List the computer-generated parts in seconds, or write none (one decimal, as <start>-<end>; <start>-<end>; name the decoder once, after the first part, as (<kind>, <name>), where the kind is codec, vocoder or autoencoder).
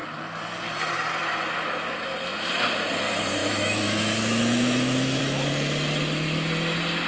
3.4-5.2 (autoencoder, DAC-VAE)